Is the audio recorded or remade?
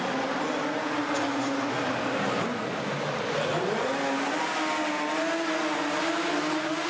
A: recorded